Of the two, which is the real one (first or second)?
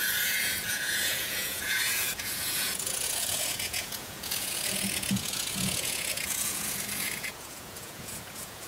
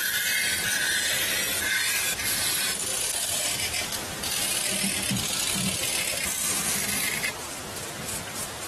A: second